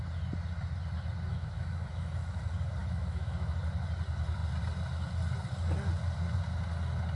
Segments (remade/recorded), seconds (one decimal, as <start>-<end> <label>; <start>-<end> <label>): 0.0-1.3 recorded; 1.3-2.4 remade; 2.4-2.8 recorded; 2.8-3.6 remade; 3.6-7.2 recorded

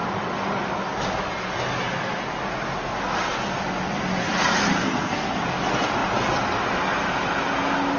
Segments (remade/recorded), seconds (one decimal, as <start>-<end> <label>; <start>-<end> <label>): 0.0-4.8 recorded; 4.8-5.4 remade; 5.4-8.0 recorded

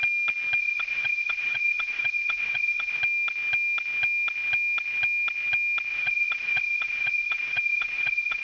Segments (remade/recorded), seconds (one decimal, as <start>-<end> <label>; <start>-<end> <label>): 0.0-0.6 recorded; 0.6-3.0 remade; 3.0-5.9 recorded; 5.9-8.4 remade

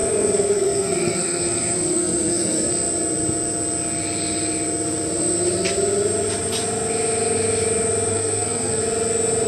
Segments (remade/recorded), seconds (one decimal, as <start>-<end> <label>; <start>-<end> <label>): 0.0-2.7 remade; 2.7-8.1 recorded; 8.1-8.8 remade; 8.8-9.5 recorded